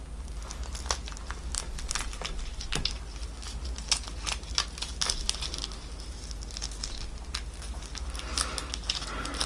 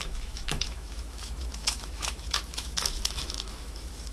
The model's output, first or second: second